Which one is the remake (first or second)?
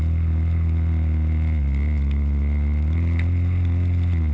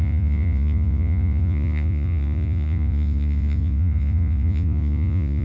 second